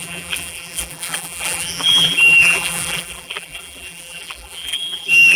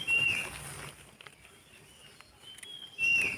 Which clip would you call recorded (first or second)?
second